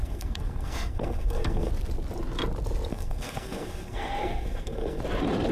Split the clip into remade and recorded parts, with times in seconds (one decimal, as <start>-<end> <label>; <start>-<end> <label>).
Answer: 0.0-1.7 remade; 1.7-2.9 recorded; 2.9-5.0 remade; 5.0-5.5 recorded